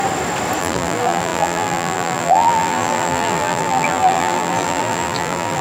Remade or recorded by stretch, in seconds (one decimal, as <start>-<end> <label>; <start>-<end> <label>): 0.0-0.6 recorded; 0.6-5.6 remade